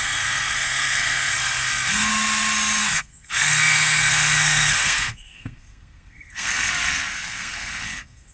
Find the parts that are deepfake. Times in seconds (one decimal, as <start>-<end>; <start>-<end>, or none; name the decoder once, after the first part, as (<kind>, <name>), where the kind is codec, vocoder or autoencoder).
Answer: 0.0-2.1 (codec, SNAC); 2.8-8.3